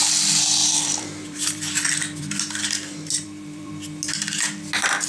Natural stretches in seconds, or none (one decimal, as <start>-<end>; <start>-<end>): 0.0-0.6; 3.7-5.1